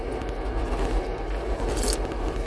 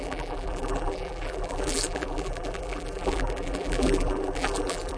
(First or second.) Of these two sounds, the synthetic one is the second